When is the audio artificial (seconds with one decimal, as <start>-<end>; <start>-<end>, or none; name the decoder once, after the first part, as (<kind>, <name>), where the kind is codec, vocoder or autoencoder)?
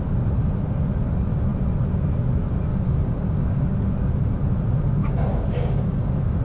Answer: 2.7-3.7 (codec, DAC); 5.0-6.4